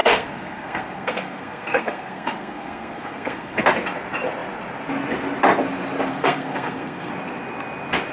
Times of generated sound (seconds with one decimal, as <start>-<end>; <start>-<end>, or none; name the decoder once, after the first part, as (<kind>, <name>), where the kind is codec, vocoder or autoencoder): 0.0-3.6 (codec, SNAC); 6.1-7.1